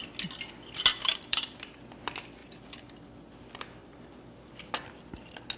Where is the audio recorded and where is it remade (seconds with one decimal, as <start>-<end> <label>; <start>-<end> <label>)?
0.0-0.9 recorded; 0.9-1.8 remade; 1.8-2.4 recorded; 2.4-2.9 remade; 2.9-3.8 recorded; 3.8-4.5 remade; 4.5-5.6 recorded

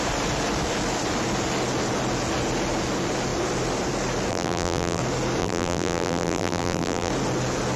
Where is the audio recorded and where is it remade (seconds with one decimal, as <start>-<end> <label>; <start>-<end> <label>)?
0.0-4.3 recorded; 4.3-5.0 remade; 5.0-5.4 recorded; 5.4-7.1 remade; 7.1-7.8 recorded

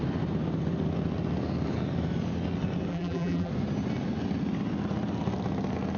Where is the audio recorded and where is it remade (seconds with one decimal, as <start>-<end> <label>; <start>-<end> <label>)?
0.0-2.9 recorded; 2.9-3.5 remade; 3.5-6.0 recorded